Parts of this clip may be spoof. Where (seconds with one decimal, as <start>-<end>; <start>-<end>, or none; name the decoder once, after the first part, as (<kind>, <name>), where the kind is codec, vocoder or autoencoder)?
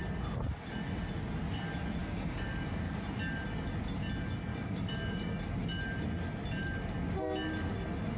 2.0-2.5 (codec, DAC); 4.5-5.4